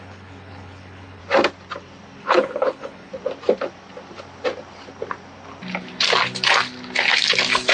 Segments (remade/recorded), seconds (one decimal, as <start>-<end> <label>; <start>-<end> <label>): 0.0-1.2 remade; 1.2-2.2 recorded; 2.2-3.1 remade; 3.1-7.7 recorded